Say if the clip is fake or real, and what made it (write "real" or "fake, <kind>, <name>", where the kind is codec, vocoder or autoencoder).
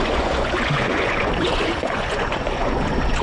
fake, vocoder, Vocos